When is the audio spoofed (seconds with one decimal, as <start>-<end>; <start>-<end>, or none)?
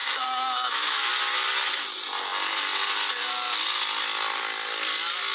0.0-1.1